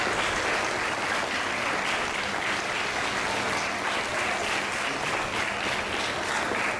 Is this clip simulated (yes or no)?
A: no